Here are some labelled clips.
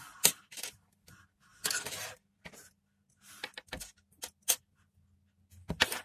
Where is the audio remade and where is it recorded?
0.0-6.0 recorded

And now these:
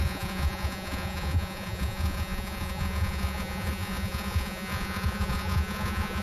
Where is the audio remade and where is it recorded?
0.0-6.2 remade

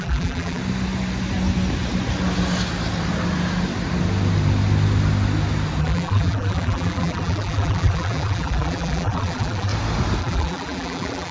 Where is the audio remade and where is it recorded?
0.0-0.6 remade; 0.6-5.8 recorded; 5.8-9.7 remade; 9.7-10.2 recorded; 10.2-11.3 remade